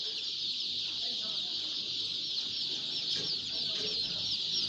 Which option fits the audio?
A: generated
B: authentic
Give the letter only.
B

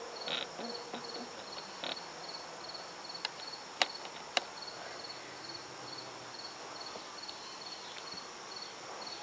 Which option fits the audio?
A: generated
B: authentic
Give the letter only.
B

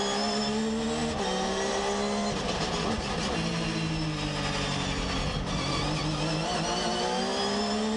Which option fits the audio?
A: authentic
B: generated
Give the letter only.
A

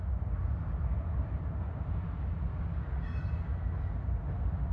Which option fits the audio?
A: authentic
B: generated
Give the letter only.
A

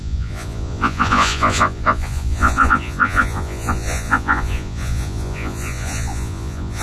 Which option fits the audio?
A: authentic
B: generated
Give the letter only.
B